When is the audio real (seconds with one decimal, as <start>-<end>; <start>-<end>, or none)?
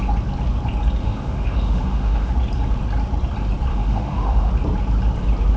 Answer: 0.0-1.0; 2.3-3.7; 4.5-5.6